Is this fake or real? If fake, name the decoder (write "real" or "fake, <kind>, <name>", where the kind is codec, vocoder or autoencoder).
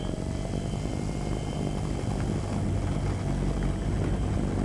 real